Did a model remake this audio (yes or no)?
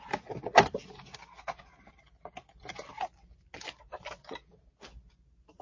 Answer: no